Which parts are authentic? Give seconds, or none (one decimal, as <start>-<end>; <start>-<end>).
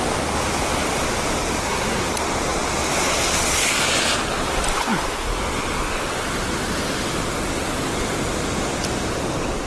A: 0.0-1.6; 2.1-9.7